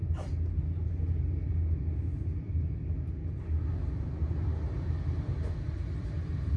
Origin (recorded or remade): recorded